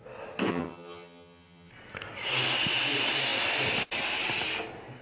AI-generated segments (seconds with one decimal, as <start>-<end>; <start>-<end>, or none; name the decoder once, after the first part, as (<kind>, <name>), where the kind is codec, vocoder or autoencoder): 0.5-1.7 (vocoder, HiFi-GAN)